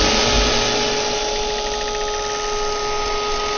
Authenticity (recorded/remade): recorded